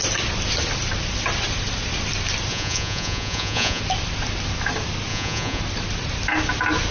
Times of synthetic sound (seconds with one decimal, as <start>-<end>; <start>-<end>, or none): 2.5-3.8; 5.1-5.6